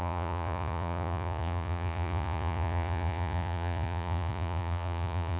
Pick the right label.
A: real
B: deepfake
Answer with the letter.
B